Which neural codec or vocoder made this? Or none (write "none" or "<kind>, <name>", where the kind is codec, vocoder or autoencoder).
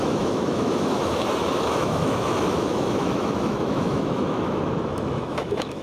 autoencoder, DAC-VAE